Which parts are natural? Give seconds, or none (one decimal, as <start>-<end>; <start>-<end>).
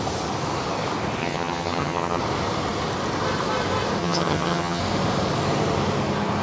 0.0-1.2; 2.2-4.0; 4.8-6.4